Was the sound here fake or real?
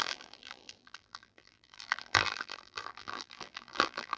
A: fake